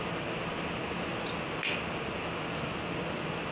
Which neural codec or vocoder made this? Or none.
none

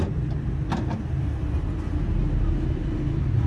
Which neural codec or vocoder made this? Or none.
none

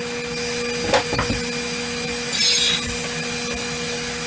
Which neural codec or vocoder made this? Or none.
none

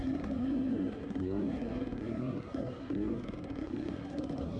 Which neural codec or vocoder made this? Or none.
codec, SNAC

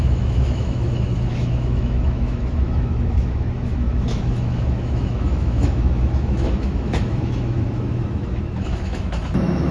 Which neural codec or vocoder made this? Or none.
autoencoder, DAC-VAE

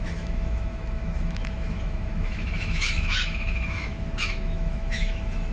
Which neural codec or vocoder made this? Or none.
autoencoder, DAC-VAE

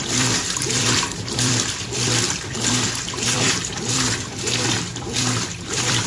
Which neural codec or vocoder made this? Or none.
vocoder, BigVGAN v2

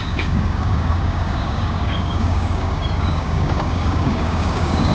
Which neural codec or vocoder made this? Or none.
codec, DAC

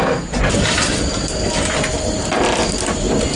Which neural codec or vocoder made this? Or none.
none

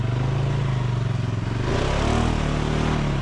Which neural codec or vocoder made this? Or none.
none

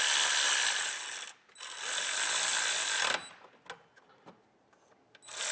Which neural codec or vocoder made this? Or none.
none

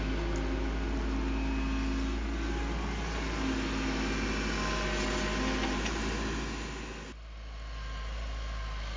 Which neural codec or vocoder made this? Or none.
none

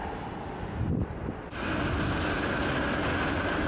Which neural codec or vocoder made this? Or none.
none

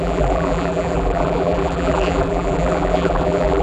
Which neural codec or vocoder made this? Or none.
vocoder, BigVGAN v2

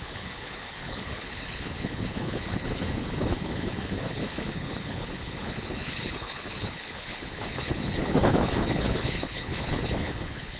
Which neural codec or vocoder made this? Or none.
codec, HILCodec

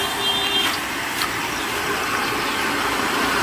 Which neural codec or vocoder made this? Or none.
none